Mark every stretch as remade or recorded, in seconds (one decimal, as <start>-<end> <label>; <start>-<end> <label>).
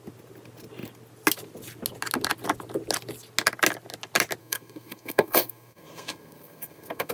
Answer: 0.0-4.4 recorded; 4.4-7.1 remade